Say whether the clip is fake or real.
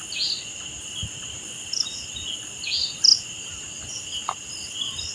real